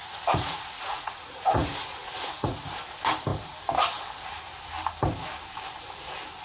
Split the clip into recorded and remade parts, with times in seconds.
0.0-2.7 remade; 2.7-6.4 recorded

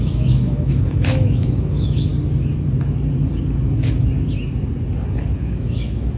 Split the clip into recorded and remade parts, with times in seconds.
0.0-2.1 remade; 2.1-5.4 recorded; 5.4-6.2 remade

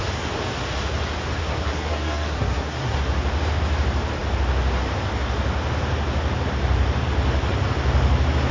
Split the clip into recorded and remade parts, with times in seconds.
0.0-1.4 recorded; 1.4-3.0 remade; 3.0-8.5 recorded